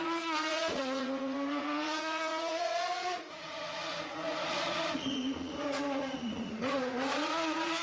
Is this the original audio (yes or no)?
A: no